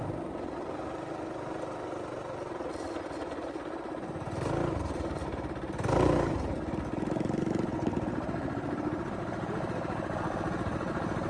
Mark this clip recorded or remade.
recorded